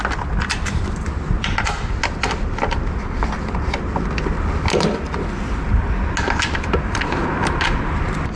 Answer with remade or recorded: recorded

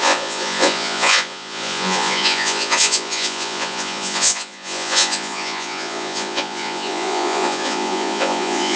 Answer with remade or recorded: remade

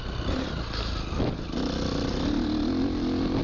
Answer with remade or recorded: recorded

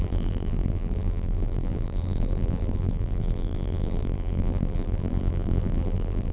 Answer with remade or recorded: remade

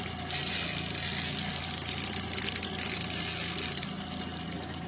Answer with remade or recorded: recorded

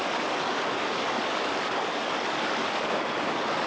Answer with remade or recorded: remade